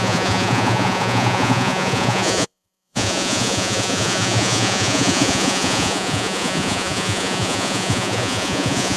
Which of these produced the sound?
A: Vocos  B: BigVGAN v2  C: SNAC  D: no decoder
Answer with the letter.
A